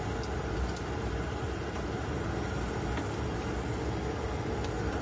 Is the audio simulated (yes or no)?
no